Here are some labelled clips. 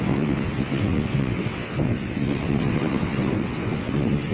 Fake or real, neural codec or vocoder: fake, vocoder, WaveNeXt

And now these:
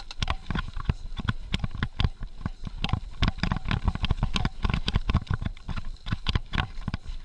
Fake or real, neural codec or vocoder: real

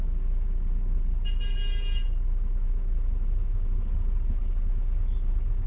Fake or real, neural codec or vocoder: real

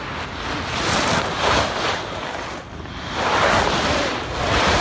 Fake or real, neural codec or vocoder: real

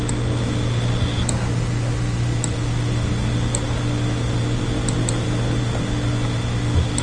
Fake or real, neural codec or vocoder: real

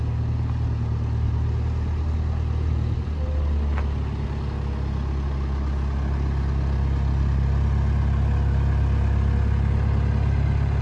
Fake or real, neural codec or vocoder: real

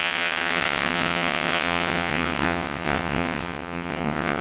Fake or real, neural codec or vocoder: fake, vocoder, WaveNeXt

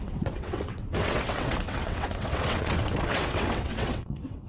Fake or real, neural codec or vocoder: fake, vocoder, WaveNeXt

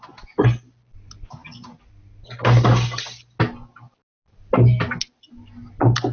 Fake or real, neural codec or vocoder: real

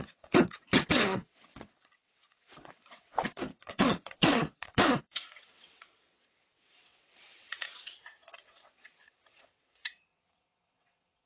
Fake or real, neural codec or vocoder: fake, vocoder, WaveNeXt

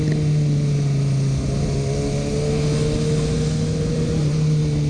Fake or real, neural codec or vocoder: real